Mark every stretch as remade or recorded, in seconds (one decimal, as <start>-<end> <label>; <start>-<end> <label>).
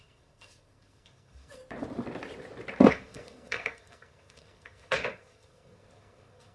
0.0-1.6 remade; 1.6-2.9 recorded; 2.9-6.5 remade